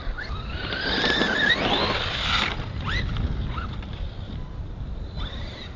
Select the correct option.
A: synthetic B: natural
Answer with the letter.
B